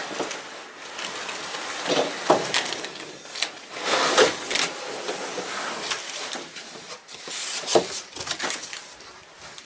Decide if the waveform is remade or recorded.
remade